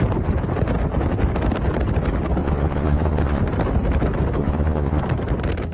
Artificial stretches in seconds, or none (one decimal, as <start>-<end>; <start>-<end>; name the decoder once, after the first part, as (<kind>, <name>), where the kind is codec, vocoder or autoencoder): 2.4-3.4 (vocoder, Vocos); 4.4-5.0